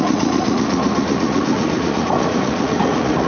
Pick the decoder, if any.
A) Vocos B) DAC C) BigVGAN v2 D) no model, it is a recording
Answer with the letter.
A